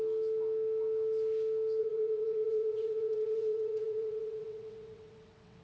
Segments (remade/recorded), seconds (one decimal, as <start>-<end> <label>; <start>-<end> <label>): 0.0-1.8 recorded; 1.8-5.6 remade

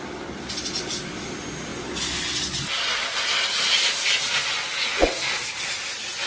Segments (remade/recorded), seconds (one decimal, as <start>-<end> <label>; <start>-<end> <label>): 0.0-6.3 recorded

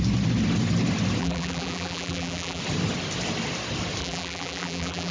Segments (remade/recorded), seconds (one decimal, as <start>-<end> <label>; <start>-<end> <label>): 0.0-1.2 recorded; 1.2-2.6 remade; 2.6-4.0 recorded; 4.0-5.1 remade